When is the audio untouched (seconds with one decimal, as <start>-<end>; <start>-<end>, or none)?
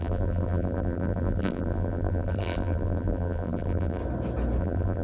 4.0-4.6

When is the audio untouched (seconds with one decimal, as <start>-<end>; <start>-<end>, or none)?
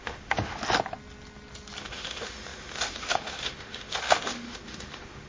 0.6-1.8